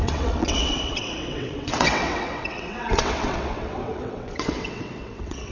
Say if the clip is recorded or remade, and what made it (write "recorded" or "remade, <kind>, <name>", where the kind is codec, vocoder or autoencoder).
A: remade, vocoder, WaveNeXt